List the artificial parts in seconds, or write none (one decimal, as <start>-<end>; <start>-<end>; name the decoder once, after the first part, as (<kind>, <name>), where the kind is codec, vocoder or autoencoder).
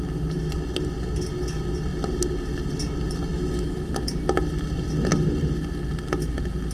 3.3-3.9 (autoencoder, DAC-VAE)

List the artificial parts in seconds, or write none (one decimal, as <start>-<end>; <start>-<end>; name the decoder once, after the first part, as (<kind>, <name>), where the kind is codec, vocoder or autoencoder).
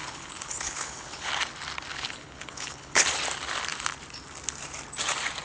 0.0-1.3 (codec, HILCodec); 1.9-3.0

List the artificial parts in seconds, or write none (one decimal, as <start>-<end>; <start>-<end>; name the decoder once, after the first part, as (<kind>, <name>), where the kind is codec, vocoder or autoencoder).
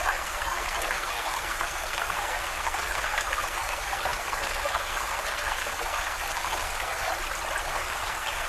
0.0-7.1 (codec, SNAC); 7.6-8.5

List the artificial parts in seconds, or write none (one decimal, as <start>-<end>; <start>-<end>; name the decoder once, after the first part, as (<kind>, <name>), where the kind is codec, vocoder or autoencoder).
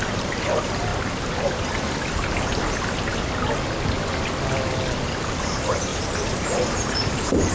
0.0-0.9 (vocoder, BigVGAN v2); 5.4-5.9; 6.9-7.5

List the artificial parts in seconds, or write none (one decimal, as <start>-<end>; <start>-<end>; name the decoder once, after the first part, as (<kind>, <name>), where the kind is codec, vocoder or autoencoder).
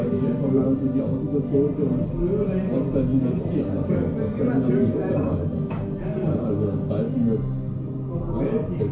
none